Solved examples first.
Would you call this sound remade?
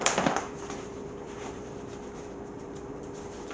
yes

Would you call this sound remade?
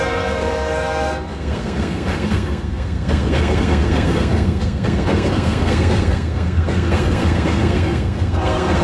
yes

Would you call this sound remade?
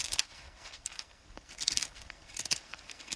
yes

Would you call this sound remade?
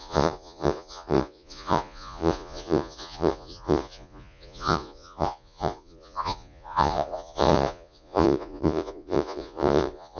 yes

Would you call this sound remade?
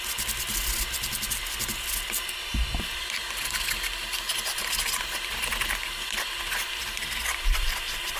no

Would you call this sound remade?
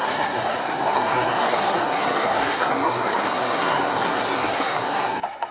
yes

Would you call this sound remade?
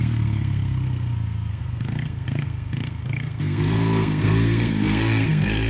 yes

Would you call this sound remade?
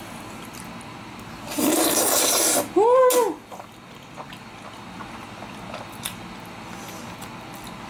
no